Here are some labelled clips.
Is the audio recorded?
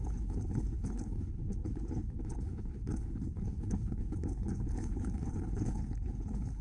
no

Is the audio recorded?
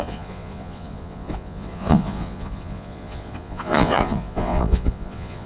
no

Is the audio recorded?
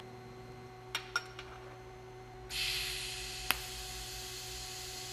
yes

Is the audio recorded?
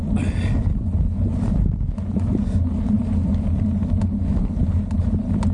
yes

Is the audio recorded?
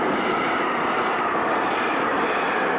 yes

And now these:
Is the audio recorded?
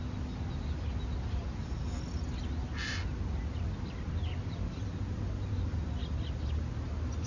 yes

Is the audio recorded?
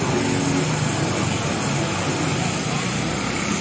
yes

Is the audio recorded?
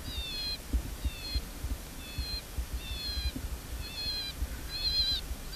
yes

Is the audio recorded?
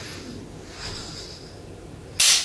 yes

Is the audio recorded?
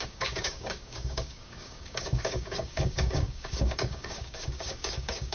no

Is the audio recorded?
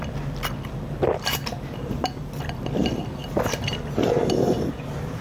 yes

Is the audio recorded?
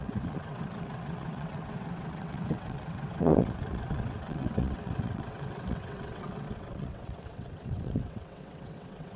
no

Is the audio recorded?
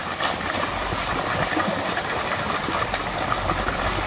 no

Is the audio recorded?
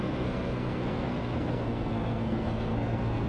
no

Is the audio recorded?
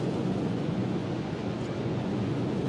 no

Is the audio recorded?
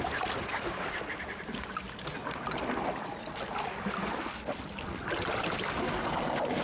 yes